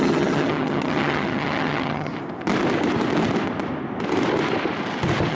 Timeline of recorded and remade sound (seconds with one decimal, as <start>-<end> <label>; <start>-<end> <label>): 0.0-2.1 remade; 2.1-5.3 recorded